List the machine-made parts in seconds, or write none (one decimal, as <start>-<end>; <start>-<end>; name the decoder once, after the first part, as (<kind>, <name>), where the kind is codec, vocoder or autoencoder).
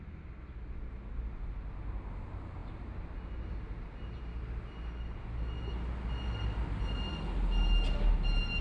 none